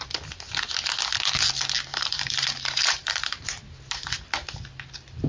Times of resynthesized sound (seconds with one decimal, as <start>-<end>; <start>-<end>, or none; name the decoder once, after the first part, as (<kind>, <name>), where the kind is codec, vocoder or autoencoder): 1.9-3.6 (vocoder, BigVGAN v2)